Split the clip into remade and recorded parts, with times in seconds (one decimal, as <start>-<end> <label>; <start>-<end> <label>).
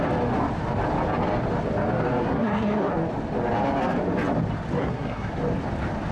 0.0-2.2 recorded; 2.2-2.9 remade; 2.9-4.8 recorded; 4.8-5.3 remade; 5.3-6.1 recorded